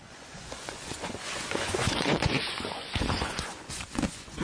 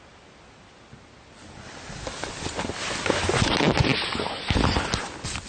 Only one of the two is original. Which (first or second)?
second